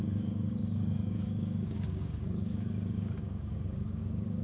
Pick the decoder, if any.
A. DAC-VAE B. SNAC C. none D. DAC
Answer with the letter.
D